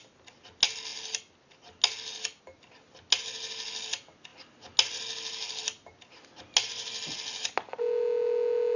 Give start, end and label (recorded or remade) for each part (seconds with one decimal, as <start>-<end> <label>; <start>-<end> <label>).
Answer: 0.0-8.8 recorded